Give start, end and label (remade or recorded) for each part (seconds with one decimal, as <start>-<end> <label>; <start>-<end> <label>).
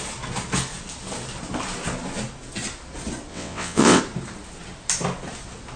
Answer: 0.0-3.3 recorded; 3.3-4.0 remade; 4.0-5.8 recorded